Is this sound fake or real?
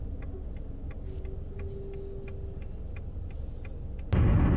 real